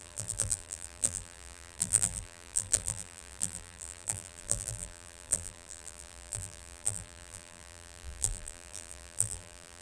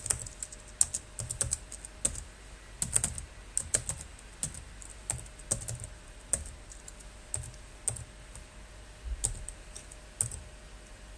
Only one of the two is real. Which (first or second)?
second